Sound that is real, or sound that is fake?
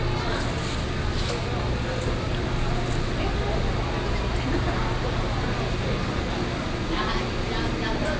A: real